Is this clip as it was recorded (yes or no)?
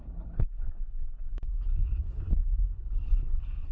no